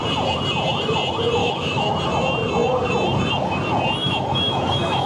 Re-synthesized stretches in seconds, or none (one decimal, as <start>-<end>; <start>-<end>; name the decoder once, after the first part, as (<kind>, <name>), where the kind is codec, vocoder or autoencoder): 1.4-2.0 (autoencoder, DAC-VAE); 4.0-5.1